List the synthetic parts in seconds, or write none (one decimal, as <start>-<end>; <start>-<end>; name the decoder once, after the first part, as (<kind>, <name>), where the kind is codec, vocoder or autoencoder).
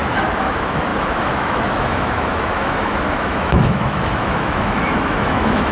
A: 0.5-5.7 (autoencoder, DAC-VAE)